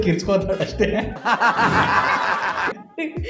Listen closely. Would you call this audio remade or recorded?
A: recorded